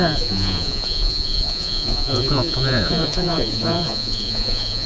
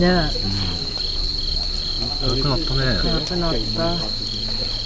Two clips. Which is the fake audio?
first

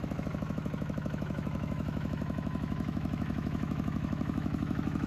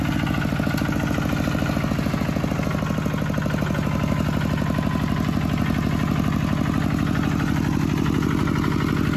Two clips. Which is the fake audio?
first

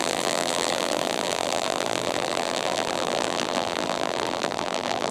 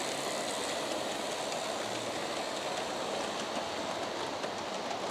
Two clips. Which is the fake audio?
first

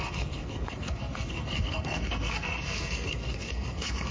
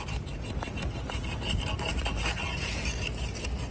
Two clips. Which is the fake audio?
first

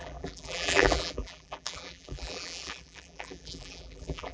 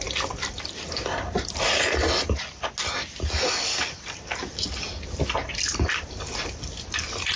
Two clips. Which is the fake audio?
first